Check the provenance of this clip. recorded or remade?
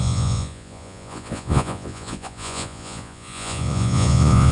remade